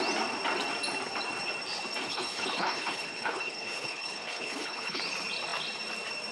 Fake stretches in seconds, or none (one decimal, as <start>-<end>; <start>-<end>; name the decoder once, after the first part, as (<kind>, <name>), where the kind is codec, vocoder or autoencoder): 2.1-5.0 (codec, HILCodec)

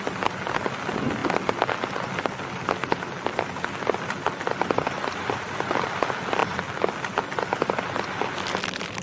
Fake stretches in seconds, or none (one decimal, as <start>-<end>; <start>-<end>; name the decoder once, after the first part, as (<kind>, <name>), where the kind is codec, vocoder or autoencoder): none

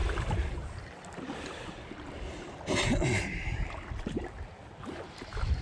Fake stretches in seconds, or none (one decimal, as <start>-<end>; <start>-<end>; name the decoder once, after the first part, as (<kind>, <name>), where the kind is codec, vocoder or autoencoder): none

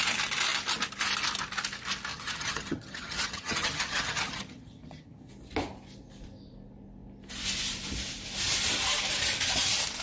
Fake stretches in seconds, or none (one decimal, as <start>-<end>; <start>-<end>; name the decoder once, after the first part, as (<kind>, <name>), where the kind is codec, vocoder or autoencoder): 2.1-5.3 (vocoder, HiFi-GAN)

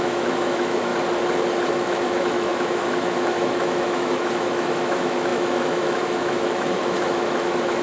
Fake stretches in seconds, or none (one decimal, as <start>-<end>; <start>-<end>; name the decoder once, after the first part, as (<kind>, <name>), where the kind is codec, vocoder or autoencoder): 0.0-0.9 (autoencoder, DAC-VAE); 1.7-7.8

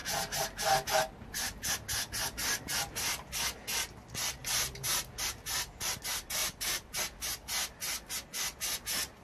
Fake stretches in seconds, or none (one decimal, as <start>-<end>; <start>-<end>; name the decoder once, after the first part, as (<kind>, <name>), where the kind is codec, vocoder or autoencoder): 4.4-6.0 (vocoder, BigVGAN v2); 6.4-7.0

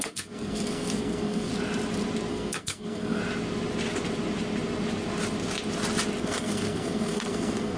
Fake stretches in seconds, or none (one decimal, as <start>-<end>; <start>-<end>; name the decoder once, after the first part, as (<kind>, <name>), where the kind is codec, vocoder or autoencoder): 0.0-1.5 (codec, SNAC); 2.3-3.2; 6.2-7.8